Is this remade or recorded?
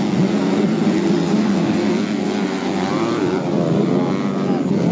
recorded